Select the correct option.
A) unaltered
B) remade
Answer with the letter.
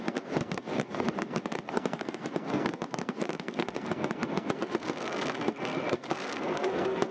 B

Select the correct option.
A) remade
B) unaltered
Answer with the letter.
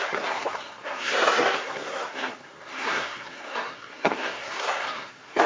A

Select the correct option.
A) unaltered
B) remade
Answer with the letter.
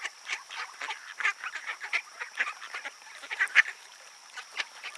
B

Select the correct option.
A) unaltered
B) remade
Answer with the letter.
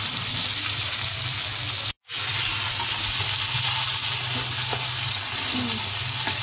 A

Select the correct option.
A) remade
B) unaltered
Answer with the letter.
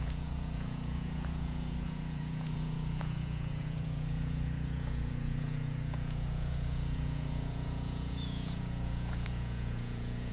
A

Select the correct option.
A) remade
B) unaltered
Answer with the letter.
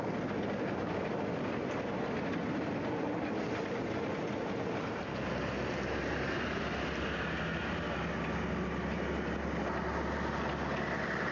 B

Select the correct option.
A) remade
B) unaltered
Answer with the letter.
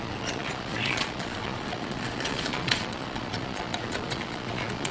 A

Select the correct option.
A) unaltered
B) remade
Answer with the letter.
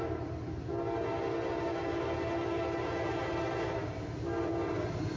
A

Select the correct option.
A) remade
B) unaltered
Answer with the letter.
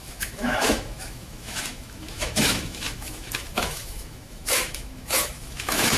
A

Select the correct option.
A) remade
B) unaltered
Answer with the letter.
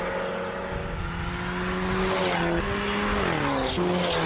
B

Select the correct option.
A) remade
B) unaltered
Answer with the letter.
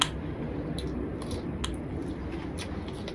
B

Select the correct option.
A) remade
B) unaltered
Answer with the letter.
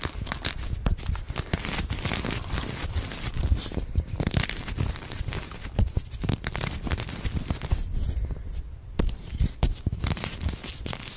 B